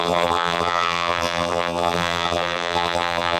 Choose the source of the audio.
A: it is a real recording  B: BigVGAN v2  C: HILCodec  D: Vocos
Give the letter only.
B